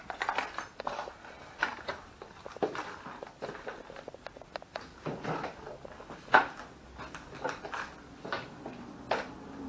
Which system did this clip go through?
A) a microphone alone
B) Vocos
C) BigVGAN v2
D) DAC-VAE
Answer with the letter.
A